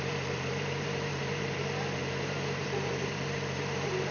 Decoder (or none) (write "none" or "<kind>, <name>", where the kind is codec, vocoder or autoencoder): vocoder, BigVGAN v2